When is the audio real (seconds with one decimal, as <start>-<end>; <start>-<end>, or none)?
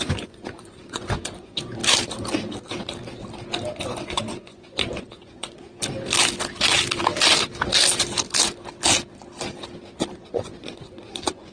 1.8-4.1; 5.7-10.1